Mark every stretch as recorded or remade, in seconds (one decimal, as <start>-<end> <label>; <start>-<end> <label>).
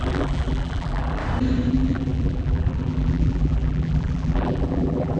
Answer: 0.0-1.2 remade; 1.2-1.7 recorded; 1.7-5.2 remade